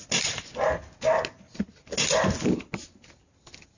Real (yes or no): yes